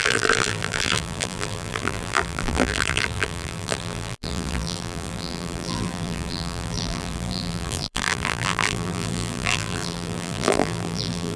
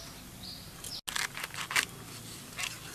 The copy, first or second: first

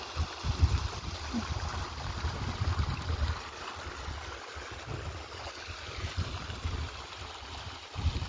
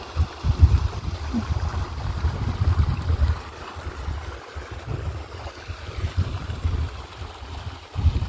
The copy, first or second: second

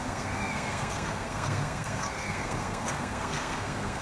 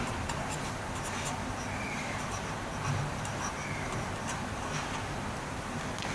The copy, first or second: first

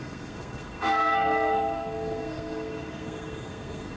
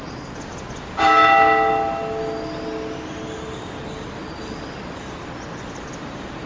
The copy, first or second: first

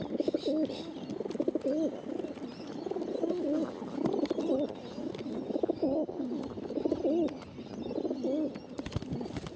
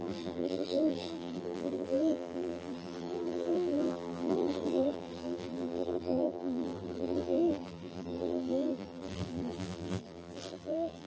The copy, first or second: second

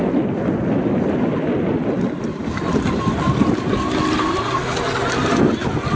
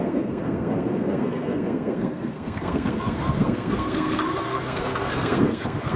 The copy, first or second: second